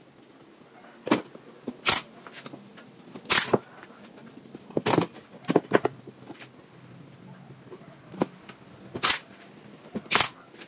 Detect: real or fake real